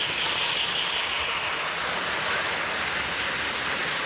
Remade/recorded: recorded